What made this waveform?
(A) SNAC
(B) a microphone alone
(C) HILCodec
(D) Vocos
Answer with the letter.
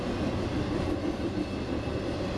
B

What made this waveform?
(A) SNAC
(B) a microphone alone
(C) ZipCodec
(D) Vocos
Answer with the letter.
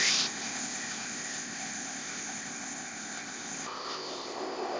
C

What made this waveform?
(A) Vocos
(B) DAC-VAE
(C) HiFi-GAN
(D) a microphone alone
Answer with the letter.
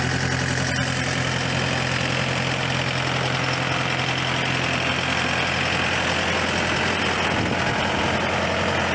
D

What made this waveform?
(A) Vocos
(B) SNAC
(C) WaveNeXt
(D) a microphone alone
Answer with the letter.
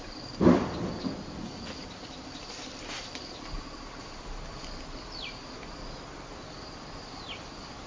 D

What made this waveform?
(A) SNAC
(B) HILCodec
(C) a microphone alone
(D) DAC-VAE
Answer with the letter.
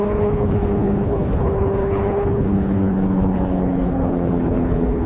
B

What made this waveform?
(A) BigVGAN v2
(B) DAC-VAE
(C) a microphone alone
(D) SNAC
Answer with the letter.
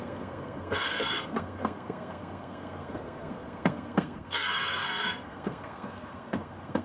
D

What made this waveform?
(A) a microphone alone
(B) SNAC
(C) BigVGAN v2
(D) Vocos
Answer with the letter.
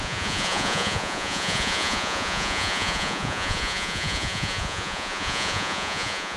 D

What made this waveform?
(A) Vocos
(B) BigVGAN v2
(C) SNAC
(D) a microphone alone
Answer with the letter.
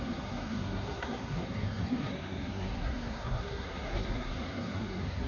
C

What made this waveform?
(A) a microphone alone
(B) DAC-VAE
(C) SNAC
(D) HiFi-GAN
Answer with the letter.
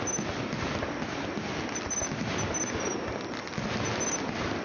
A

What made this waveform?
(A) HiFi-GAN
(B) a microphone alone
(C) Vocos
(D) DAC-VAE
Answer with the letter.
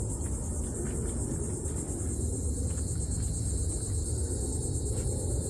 B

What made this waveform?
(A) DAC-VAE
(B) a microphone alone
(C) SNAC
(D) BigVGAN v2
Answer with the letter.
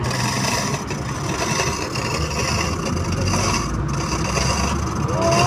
B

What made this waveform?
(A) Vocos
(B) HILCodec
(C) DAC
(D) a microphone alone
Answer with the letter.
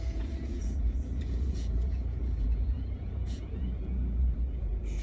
A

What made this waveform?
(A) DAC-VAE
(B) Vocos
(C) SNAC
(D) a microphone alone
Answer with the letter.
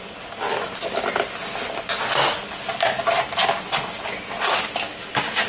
D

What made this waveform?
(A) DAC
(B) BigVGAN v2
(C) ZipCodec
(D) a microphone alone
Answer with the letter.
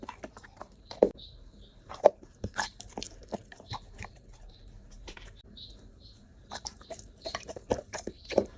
B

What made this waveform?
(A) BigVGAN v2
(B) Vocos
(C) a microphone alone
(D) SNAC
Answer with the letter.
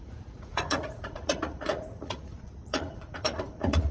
B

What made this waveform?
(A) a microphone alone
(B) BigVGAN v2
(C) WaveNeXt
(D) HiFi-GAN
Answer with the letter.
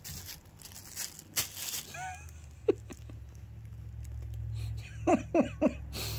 A